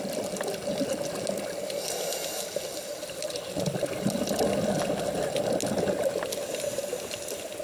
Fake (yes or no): no